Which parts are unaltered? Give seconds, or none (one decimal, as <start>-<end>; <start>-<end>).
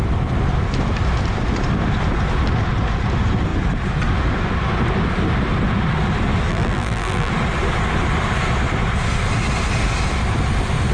0.0-6.5; 7.3-10.9